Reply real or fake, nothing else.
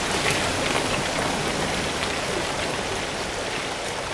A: real